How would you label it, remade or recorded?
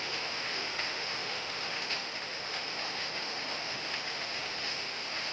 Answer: remade